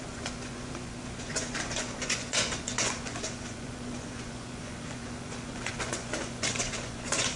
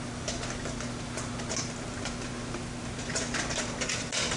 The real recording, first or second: second